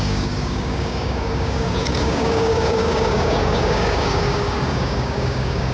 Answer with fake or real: fake